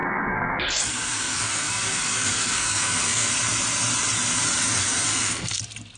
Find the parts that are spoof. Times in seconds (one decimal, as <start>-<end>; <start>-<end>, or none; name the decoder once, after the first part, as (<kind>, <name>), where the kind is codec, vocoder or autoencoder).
0.0-3.3 (codec, SNAC); 4.8-5.6